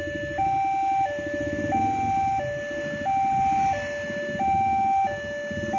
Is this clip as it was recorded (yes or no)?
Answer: yes